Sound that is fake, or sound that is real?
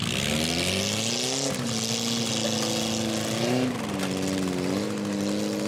real